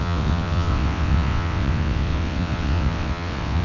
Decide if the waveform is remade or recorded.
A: remade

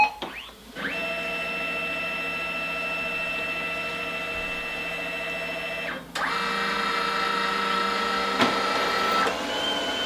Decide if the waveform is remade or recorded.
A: recorded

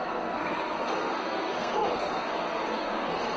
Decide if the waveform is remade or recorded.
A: remade